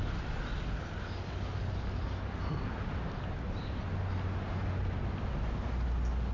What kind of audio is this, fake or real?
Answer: real